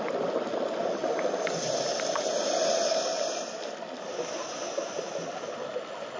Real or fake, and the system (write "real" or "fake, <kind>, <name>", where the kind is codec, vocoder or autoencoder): real